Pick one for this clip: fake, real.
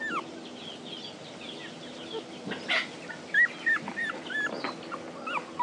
real